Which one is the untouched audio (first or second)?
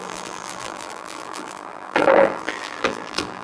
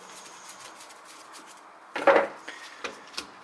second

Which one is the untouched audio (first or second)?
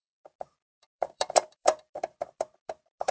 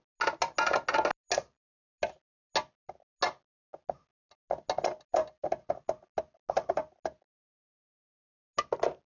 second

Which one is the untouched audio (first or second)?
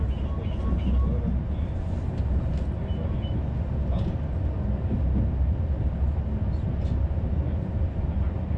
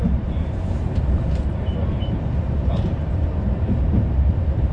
first